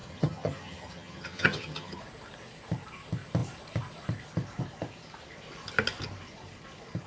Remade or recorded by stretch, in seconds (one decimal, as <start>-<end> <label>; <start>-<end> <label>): 0.0-2.0 remade; 2.0-7.1 recorded